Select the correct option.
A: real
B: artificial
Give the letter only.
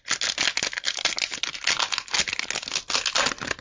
A